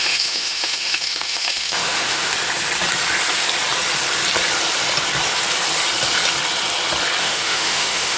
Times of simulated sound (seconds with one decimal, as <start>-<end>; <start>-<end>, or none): 0.0-2.3; 7.2-8.2